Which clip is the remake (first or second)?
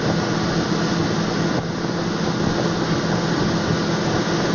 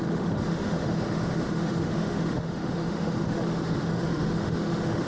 second